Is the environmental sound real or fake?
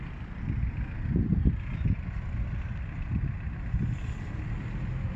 real